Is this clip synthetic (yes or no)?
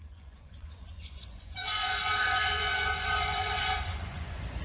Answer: yes